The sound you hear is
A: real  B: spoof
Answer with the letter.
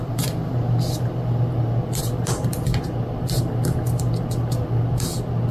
A